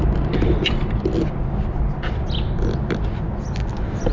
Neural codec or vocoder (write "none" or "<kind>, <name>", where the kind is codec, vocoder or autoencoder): none